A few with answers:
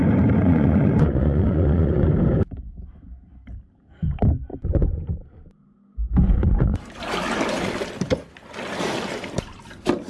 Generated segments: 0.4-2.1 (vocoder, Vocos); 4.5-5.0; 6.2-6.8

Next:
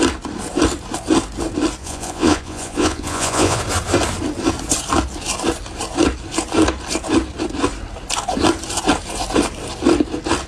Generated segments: 1.8-3.6 (vocoder, Vocos)

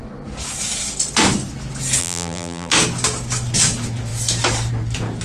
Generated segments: 2.0-2.7 (vocoder, BigVGAN v2)

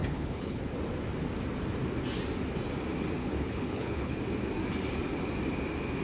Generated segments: 0.0-0.6 (codec, HILCodec); 3.2-4.2

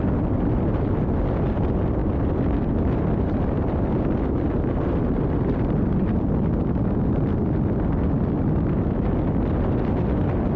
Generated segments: none

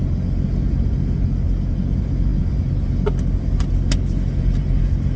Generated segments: none

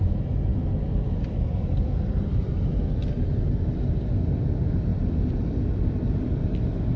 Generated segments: 0.5-3.1 (vocoder, BigVGAN v2); 4.9-6.6

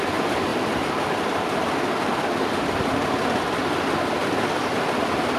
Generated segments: none